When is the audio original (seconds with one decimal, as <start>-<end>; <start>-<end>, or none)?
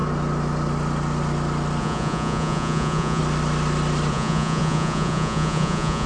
0.0-1.8; 3.2-4.1